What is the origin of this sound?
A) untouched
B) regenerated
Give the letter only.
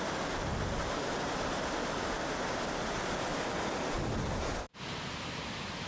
A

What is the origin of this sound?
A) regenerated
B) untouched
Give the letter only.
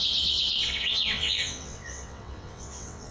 A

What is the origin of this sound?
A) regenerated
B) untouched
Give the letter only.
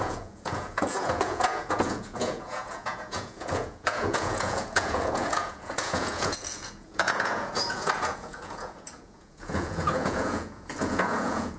A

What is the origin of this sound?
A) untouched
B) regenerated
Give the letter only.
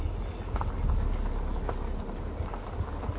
A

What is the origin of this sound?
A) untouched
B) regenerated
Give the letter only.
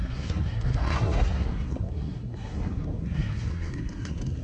B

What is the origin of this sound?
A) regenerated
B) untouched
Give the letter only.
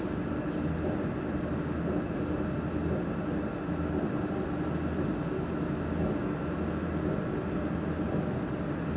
B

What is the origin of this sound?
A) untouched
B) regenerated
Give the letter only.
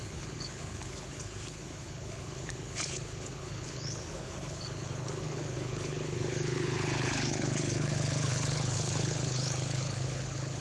B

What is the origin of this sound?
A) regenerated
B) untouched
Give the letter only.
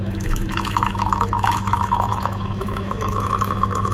A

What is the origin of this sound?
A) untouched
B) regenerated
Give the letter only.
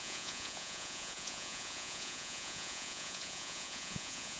B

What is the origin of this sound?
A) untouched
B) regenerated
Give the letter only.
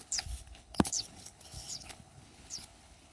B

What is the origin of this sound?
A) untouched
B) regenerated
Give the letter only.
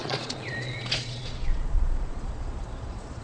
B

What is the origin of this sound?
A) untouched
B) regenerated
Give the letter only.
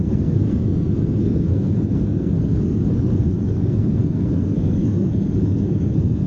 B